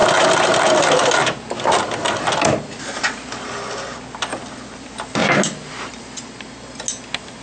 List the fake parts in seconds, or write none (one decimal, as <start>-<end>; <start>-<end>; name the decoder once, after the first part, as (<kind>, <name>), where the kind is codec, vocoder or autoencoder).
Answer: none